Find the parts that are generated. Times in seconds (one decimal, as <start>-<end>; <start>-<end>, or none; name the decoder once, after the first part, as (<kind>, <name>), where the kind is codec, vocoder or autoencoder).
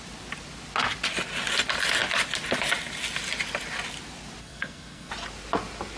4.4-5.1 (codec, SNAC)